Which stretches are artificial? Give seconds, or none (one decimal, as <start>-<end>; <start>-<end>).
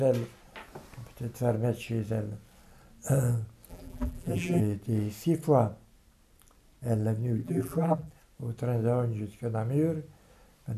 3.7-4.6; 7.4-8.1